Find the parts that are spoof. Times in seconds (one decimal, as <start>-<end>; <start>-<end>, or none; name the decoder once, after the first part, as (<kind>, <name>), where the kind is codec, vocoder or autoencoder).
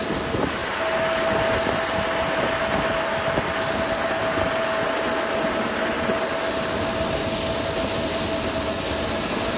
none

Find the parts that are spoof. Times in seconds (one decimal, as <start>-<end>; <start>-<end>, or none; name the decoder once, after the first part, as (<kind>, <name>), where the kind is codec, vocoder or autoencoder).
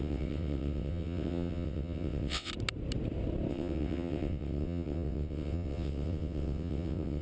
0.0-2.5 (vocoder, WaveNeXt); 3.5-7.2